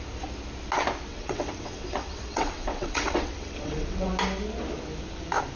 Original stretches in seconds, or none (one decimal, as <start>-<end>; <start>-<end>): 0.0-1.1; 4.1-5.6